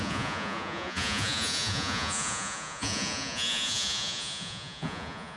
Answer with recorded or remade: remade